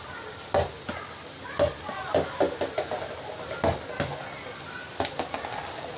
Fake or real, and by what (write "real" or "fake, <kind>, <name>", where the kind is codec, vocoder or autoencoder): real